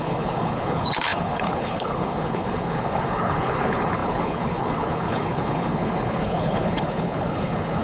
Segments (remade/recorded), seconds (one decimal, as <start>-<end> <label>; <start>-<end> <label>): 0.0-7.8 remade